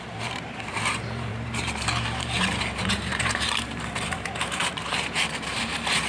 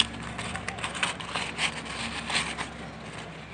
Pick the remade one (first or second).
first